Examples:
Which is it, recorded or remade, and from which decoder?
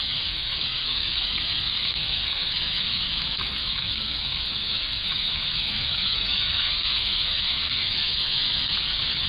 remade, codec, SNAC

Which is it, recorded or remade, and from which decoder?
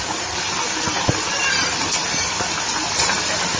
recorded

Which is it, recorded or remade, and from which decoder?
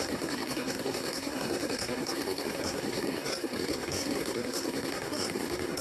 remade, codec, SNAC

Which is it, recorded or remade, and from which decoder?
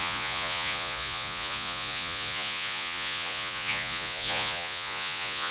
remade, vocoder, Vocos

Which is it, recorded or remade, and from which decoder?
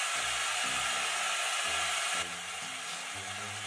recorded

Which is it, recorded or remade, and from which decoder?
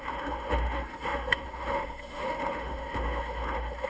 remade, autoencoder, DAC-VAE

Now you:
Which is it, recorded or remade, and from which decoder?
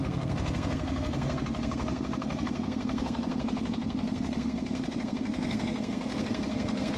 remade, codec, SNAC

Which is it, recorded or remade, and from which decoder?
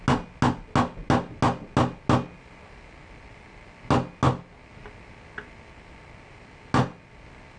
recorded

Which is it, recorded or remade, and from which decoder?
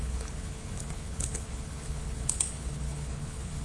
remade, codec, HILCodec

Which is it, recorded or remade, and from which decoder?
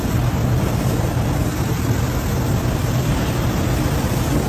recorded